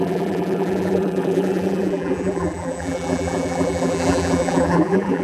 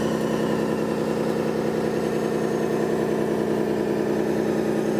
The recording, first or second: second